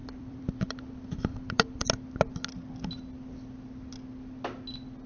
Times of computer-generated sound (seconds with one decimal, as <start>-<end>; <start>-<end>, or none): 0.0-1.8